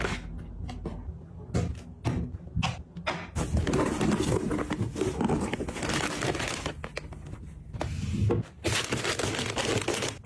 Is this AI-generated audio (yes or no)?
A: no